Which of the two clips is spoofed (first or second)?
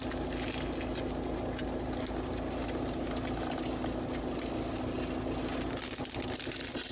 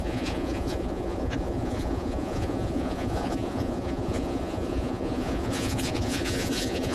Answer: second